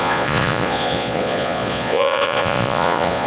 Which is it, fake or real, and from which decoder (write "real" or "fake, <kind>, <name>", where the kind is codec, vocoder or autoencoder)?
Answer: fake, vocoder, Vocos